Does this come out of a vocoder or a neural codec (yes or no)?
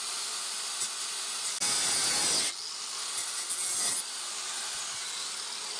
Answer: no